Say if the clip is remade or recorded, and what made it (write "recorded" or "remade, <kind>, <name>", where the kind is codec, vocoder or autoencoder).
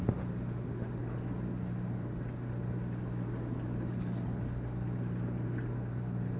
recorded